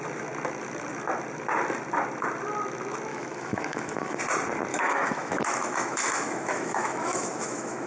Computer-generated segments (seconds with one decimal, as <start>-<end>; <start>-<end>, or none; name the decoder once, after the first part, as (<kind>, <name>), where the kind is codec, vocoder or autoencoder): 3.1-4.2 (autoencoder, DAC-VAE); 4.7-7.9